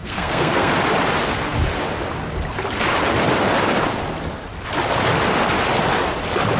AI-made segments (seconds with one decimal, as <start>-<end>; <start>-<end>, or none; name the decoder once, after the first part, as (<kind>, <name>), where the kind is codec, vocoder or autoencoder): 0.0-0.8 (codec, SNAC)